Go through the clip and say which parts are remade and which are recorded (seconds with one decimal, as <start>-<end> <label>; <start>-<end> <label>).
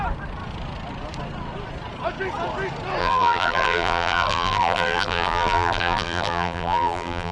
0.0-3.0 recorded; 3.0-7.3 remade